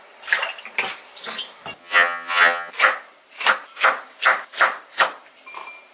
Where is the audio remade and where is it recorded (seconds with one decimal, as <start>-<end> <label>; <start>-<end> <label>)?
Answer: 0.0-1.8 recorded; 1.8-2.7 remade; 2.7-5.9 recorded